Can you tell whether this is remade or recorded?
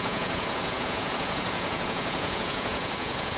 remade